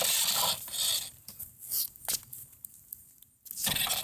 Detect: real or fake real